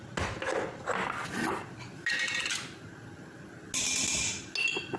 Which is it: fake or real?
real